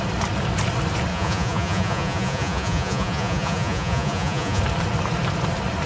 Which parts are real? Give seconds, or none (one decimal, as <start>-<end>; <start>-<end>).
0.0-1.1; 4.6-5.9